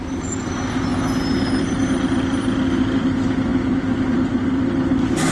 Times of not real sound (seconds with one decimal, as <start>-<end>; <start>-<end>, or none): none